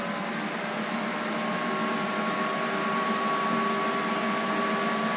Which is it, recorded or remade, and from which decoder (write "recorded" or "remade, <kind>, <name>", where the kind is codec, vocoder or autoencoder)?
recorded